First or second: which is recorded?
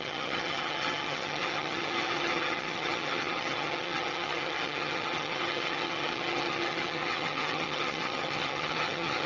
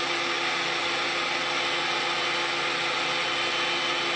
second